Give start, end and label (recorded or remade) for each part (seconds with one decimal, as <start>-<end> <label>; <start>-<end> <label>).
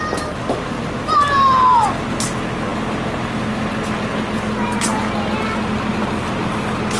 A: 0.0-7.0 recorded